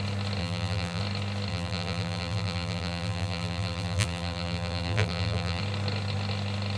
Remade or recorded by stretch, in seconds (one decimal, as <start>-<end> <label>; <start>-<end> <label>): 0.0-0.4 recorded; 0.4-1.0 remade; 1.0-1.5 recorded; 1.5-5.6 remade; 5.6-6.8 recorded